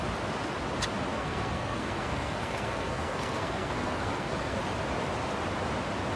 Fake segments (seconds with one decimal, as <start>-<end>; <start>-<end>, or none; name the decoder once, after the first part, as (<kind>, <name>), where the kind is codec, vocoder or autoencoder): 1.1-4.6 (codec, SNAC)